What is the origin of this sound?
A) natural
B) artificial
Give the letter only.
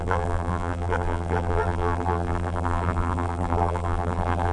B